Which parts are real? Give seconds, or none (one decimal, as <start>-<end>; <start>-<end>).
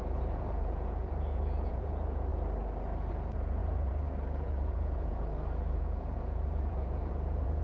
2.3-3.1